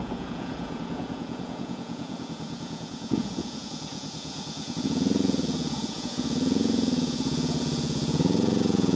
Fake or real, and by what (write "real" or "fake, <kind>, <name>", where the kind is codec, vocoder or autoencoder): fake, vocoder, Vocos